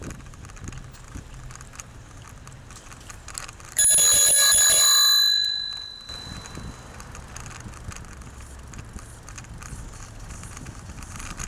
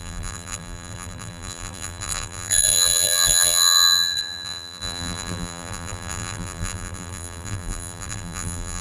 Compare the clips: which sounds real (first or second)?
first